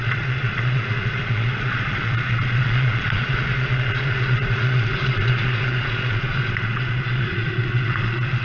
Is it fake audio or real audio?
fake